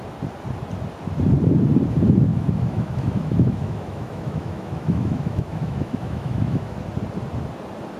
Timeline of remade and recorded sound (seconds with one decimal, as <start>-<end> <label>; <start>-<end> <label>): 0.0-2.3 recorded; 2.3-6.8 remade; 6.8-8.0 recorded